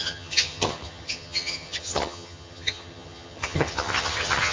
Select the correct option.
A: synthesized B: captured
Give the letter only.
A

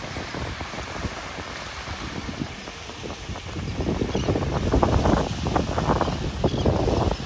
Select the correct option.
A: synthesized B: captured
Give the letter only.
B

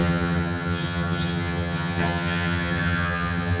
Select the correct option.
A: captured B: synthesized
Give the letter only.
B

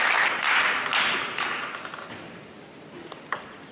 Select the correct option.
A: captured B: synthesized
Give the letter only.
A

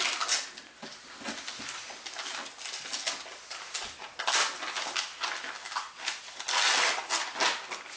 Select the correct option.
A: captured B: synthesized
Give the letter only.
A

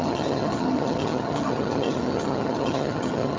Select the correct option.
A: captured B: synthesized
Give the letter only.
B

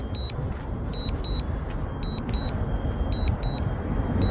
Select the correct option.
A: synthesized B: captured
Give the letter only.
B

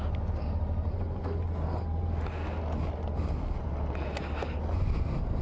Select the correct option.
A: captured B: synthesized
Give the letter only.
A